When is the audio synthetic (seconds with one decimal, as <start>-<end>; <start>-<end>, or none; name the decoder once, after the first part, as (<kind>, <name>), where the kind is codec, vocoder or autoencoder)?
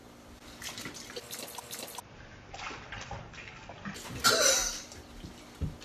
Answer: 0.0-3.5 (vocoder, BigVGAN v2); 4.6-5.3